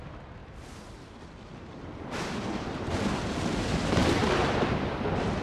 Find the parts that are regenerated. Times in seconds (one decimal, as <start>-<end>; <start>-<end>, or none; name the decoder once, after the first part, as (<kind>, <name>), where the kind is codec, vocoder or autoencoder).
4.2-4.9 (vocoder, BigVGAN v2)